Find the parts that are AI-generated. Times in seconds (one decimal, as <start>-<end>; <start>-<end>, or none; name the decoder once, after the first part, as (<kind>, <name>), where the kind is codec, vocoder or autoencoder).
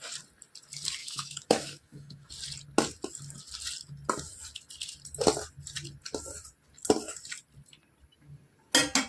1.0-2.3 (autoencoder, DAC-VAE)